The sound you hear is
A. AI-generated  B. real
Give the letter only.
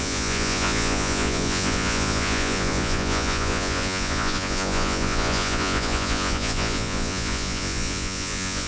A